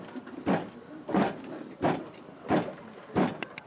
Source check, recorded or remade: recorded